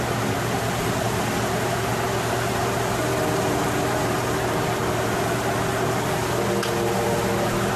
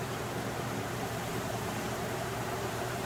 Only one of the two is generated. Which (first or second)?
second